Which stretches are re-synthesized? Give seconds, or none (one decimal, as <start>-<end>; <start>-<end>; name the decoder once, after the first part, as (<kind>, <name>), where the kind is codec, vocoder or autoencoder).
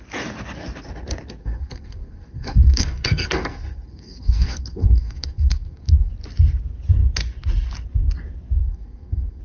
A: 1.4-6.1 (codec, SNAC); 8.6-9.4